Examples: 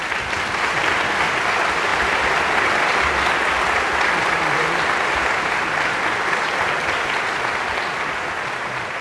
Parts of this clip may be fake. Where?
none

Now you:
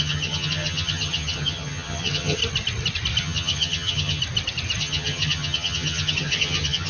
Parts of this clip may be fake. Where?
0.0-2.4; 3.2-4.2; 4.8-6.9

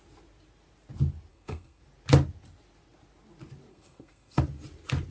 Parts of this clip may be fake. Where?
1.3-1.8; 3.7-4.4

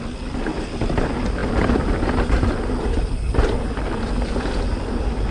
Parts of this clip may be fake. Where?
none

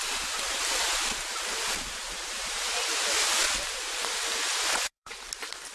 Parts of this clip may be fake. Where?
4.5-5.1

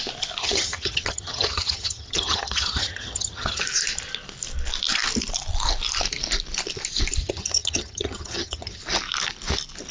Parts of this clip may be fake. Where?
0.4-3.6; 7.2-8.8